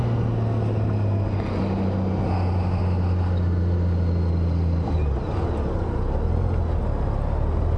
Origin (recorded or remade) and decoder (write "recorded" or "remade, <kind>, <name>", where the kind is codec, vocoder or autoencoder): recorded